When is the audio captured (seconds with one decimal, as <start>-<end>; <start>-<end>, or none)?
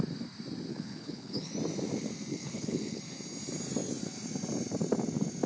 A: 0.0-0.7; 1.5-2.3; 3.0-5.5